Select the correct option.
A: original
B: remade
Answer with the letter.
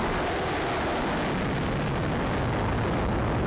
A